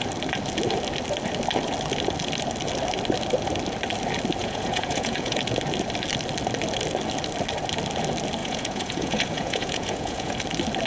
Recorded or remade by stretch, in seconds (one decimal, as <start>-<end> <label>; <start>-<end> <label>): 0.0-4.4 recorded; 4.4-5.4 remade; 5.4-8.4 recorded; 8.4-10.4 remade; 10.4-10.9 recorded